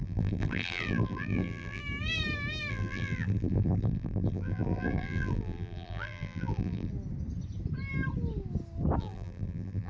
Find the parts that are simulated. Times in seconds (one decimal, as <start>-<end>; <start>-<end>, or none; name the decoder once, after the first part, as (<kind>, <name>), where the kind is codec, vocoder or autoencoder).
0.0-1.8 (vocoder, BigVGAN v2); 2.7-6.9; 9.0-9.9